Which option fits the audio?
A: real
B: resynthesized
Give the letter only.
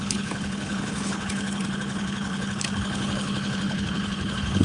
B